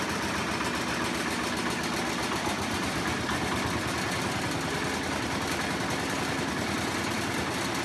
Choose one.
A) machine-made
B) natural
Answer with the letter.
B